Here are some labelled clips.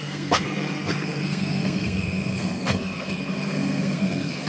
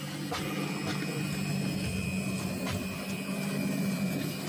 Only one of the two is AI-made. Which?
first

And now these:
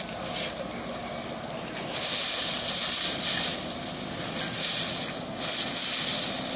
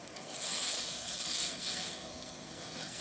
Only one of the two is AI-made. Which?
second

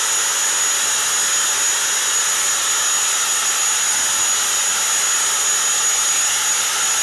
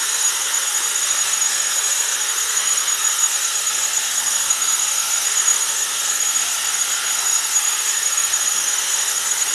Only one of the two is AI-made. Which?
second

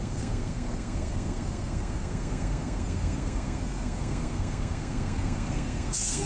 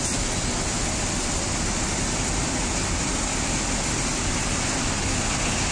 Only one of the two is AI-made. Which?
first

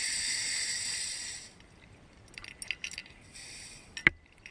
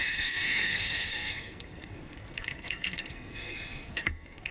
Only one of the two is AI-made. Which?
second